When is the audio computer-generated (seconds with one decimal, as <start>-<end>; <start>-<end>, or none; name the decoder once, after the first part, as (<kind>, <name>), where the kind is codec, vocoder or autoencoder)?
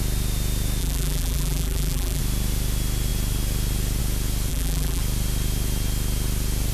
0.8-2.2 (vocoder, BigVGAN v2); 4.5-5.0